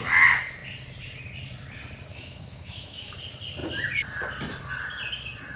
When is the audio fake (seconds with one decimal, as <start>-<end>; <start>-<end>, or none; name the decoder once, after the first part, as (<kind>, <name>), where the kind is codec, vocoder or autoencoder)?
2.1-3.1 (autoencoder, DAC-VAE)